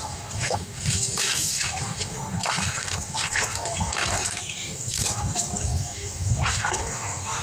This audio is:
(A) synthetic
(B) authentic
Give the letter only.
A